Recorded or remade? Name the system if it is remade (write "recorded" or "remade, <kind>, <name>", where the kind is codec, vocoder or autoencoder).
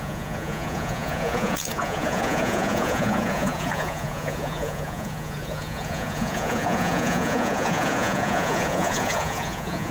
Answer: remade, vocoder, Vocos